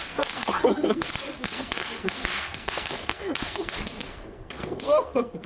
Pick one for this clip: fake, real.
fake